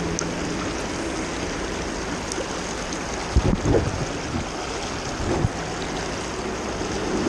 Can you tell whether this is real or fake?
real